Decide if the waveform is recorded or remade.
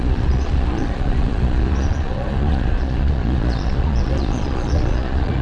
remade